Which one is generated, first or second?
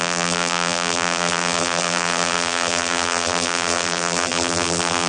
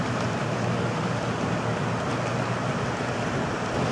first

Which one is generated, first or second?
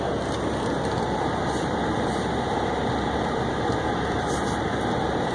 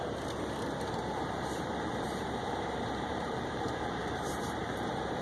second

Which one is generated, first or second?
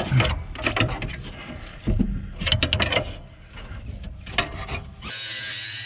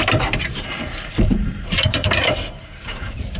second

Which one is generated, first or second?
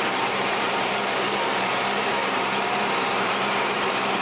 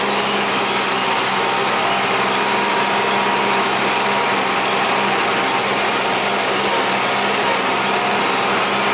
first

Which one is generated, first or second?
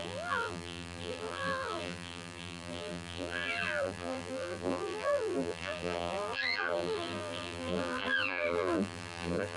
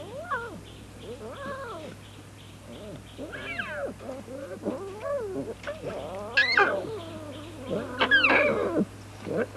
first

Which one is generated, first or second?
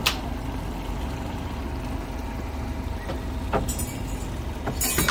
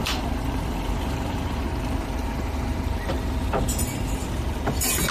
second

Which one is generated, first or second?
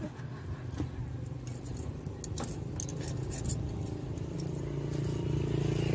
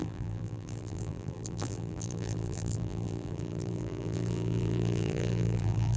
second